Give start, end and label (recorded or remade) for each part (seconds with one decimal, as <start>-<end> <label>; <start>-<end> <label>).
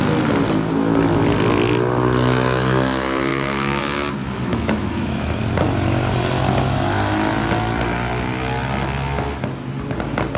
0.0-3.3 recorded; 3.3-3.8 remade; 3.8-4.2 recorded; 4.2-5.4 remade; 5.4-10.4 recorded